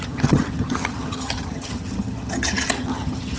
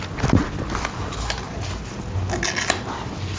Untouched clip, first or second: second